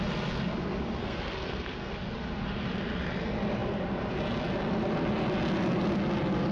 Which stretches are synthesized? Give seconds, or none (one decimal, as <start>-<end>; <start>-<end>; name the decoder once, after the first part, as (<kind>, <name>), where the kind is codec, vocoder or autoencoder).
1.0-1.9 (codec, SNAC)